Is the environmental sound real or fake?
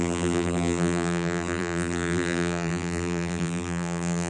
fake